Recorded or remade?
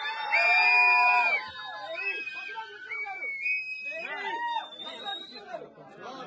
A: recorded